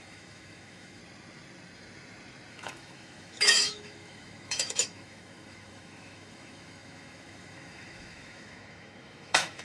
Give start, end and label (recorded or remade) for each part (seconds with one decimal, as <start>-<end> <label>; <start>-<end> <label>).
0.0-1.0 remade; 1.0-2.5 recorded; 2.5-9.6 remade